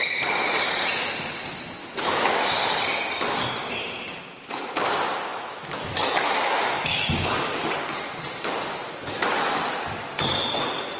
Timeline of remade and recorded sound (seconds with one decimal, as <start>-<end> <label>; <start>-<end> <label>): 0.0-1.8 recorded; 1.8-2.4 remade; 2.4-5.3 recorded; 5.3-7.7 remade; 7.7-11.0 recorded